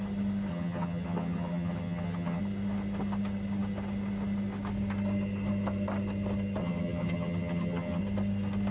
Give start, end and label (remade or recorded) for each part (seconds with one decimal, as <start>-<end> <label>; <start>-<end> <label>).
0.0-0.5 recorded; 0.5-2.4 remade; 2.4-6.6 recorded; 6.6-8.0 remade; 8.0-8.7 recorded